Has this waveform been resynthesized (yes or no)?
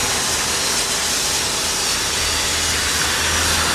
no